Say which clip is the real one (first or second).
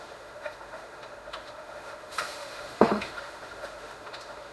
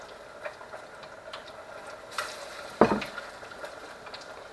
second